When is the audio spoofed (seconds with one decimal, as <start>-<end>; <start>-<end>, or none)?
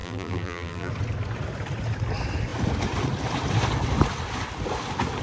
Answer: 0.0-0.9